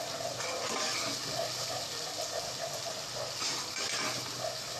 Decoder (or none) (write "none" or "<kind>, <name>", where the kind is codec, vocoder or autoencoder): none